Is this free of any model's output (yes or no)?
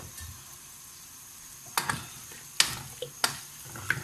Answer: yes